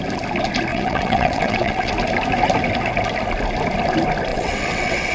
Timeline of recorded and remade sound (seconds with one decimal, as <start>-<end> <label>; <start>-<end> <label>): 0.0-0.7 recorded; 0.7-1.9 remade; 1.9-4.3 recorded; 4.3-5.1 remade